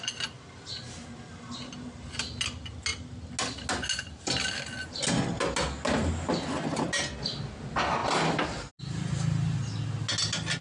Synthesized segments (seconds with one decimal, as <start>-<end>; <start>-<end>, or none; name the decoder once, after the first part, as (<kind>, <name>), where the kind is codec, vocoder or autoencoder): none